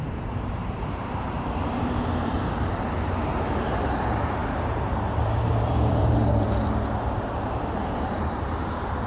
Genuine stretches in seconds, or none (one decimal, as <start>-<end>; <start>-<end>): none